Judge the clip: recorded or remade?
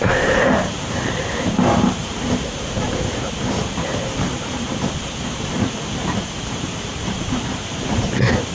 remade